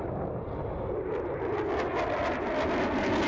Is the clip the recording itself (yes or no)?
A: yes